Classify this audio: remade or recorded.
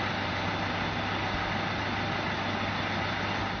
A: recorded